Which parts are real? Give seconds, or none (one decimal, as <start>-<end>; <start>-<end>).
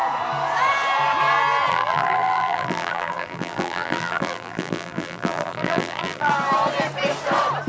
0.0-1.7; 6.3-7.7